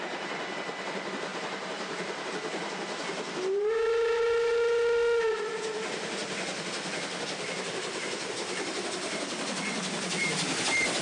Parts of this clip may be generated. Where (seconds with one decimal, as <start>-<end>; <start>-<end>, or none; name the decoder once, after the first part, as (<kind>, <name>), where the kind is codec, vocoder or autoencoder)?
1.3-2.3 (vocoder, BigVGAN v2)